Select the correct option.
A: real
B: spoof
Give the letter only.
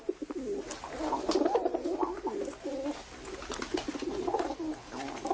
A